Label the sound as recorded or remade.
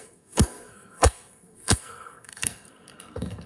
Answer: remade